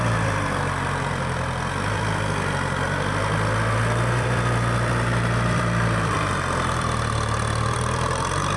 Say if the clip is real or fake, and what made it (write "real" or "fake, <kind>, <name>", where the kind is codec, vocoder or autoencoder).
fake, vocoder, BigVGAN v2